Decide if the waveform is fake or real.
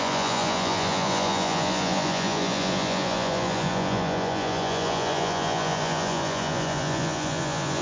fake